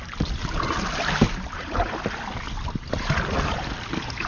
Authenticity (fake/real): real